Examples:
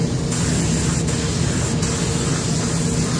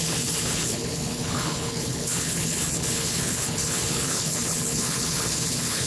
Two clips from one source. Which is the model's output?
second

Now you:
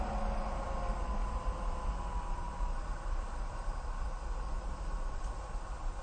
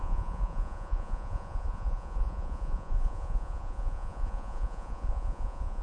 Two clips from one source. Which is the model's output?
second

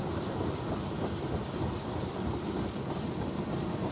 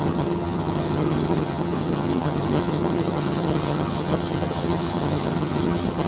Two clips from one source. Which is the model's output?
second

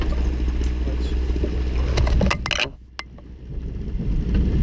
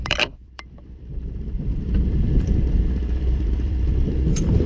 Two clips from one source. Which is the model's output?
second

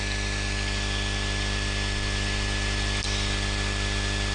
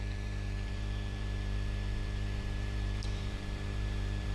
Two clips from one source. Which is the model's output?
second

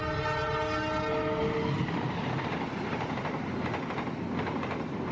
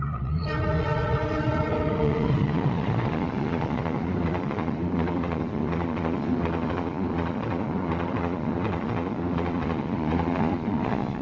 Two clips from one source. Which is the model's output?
second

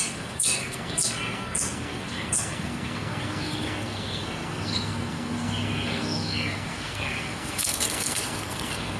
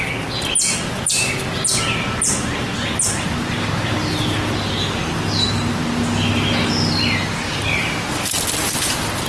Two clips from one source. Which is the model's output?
first